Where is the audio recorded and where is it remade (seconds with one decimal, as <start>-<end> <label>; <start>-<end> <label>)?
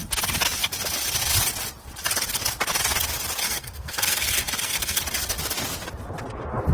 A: 0.0-3.4 recorded; 3.4-5.0 remade; 5.0-6.7 recorded